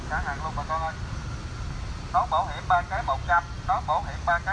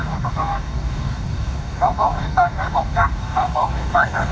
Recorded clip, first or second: first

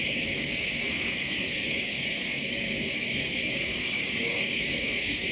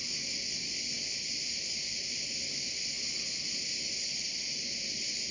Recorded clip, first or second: second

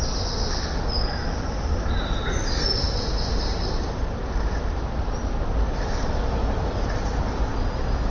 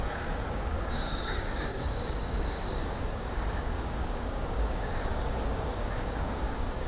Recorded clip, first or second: first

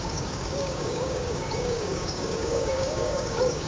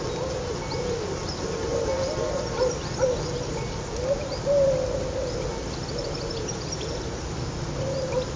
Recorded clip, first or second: second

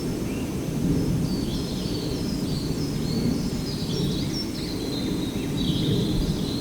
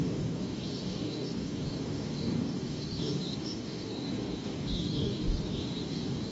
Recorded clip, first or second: first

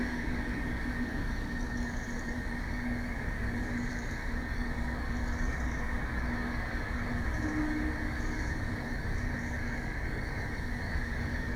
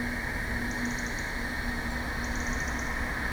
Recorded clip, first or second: second